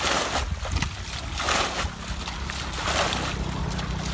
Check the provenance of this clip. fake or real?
real